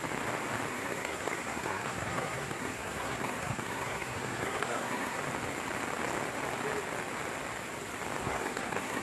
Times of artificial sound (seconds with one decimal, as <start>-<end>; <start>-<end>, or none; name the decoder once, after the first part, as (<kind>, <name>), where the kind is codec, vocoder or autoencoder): 0.7-5.2 (codec, SNAC); 8.2-9.0